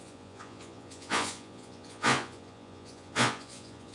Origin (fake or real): fake